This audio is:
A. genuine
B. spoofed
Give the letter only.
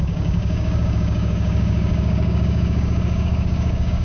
B